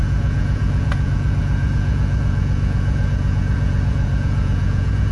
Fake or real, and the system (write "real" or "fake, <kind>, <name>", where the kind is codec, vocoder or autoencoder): fake, vocoder, Vocos